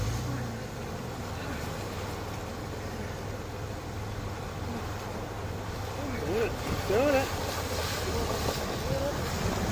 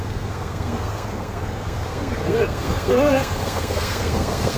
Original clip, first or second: first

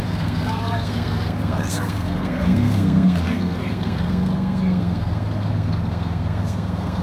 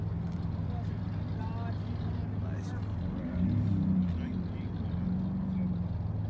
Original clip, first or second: second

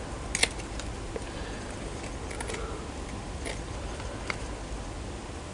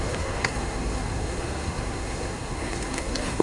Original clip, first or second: first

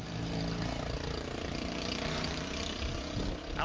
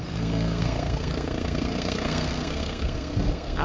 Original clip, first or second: first